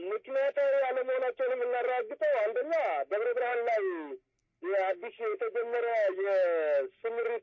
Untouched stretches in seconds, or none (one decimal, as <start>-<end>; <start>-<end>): 0.0-7.4